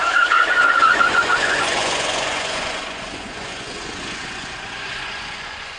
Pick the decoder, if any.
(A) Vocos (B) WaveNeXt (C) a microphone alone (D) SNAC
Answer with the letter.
A